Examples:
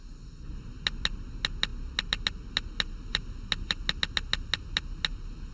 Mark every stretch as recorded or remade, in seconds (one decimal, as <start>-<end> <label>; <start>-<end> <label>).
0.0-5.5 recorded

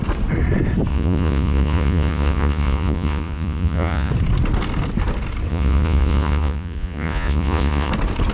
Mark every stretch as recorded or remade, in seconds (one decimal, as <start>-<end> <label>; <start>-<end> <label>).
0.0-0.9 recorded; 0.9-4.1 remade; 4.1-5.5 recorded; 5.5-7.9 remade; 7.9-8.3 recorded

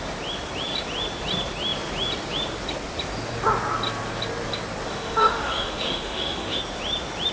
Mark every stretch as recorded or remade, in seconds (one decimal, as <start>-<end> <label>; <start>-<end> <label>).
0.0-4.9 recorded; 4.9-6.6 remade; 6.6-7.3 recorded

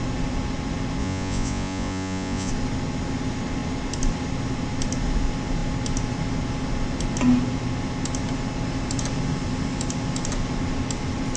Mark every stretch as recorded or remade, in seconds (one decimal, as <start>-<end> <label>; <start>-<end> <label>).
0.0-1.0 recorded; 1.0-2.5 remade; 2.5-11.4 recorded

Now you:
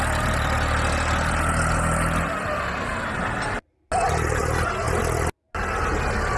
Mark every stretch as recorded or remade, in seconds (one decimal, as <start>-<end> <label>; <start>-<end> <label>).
0.0-6.4 recorded

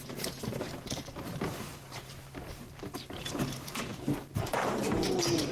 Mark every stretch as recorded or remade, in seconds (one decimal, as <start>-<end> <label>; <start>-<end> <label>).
0.0-5.5 remade

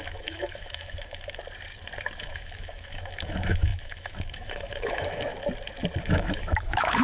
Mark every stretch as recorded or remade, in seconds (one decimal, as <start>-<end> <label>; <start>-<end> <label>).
0.0-1.4 remade; 1.4-2.2 recorded; 2.2-5.3 remade; 5.3-6.0 recorded; 6.0-7.0 remade

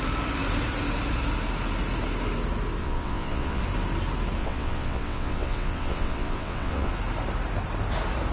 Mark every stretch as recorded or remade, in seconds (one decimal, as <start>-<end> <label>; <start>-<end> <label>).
0.0-2.8 recorded; 2.8-3.6 remade; 3.6-4.4 recorded; 4.4-6.9 remade; 6.9-8.3 recorded